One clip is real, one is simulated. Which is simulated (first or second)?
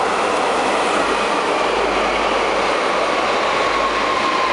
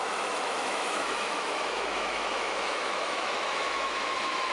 second